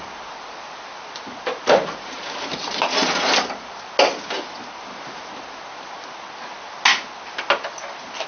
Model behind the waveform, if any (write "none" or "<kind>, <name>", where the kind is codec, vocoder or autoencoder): none